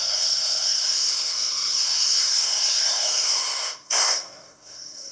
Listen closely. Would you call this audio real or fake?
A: fake